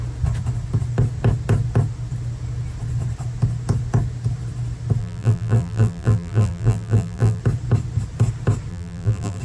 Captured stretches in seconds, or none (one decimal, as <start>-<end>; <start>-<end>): 0.0-5.0; 7.4-8.7